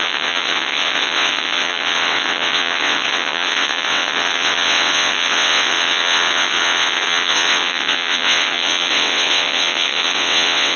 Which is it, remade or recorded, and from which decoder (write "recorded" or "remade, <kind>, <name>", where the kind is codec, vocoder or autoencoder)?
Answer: remade, vocoder, WaveNeXt